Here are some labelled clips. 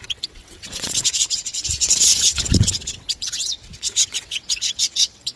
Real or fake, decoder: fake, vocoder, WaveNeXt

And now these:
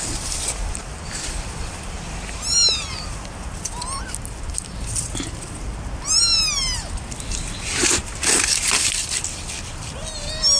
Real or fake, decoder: real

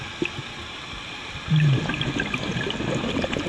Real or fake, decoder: real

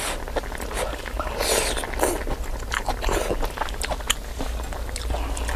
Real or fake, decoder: real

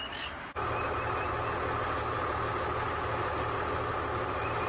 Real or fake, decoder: real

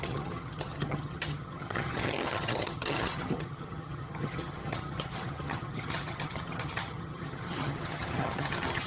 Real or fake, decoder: fake, vocoder, HiFi-GAN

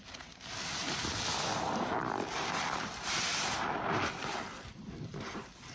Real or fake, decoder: fake, vocoder, BigVGAN v2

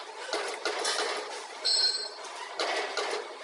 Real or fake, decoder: real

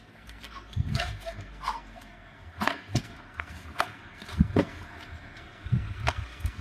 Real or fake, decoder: fake, codec, SNAC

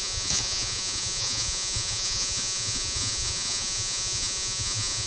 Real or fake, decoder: fake, vocoder, Vocos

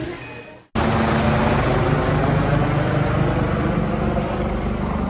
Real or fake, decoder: real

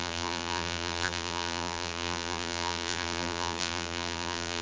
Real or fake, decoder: fake, vocoder, BigVGAN v2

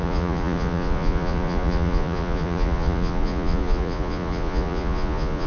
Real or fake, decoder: fake, vocoder, Vocos